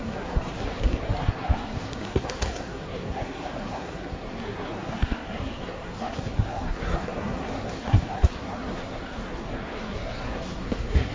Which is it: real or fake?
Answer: fake